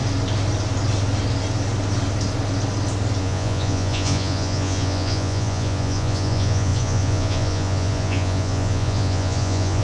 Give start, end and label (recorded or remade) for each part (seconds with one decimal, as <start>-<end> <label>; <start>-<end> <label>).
0.0-3.2 recorded; 3.2-9.8 remade